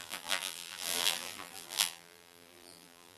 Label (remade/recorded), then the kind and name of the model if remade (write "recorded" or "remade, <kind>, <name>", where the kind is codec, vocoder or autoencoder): remade, vocoder, BigVGAN v2